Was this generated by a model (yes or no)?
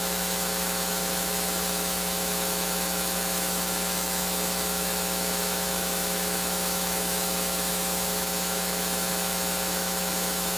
yes